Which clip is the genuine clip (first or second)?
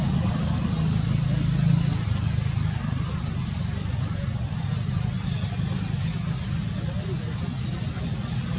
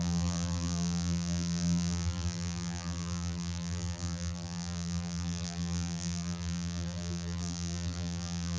first